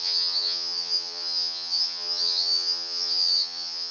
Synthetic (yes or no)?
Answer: yes